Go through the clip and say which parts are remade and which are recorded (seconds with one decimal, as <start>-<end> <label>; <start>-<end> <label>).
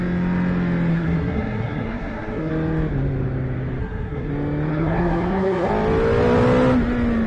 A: 0.0-0.9 recorded; 0.9-2.5 remade; 2.5-3.8 recorded; 3.8-4.3 remade; 4.3-4.7 recorded; 4.7-5.7 remade; 5.7-7.3 recorded